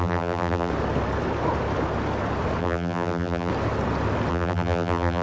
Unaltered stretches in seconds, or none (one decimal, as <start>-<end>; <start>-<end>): 0.7-2.6; 3.5-4.3